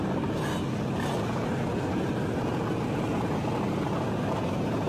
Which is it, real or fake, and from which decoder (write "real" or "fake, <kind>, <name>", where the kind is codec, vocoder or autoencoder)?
real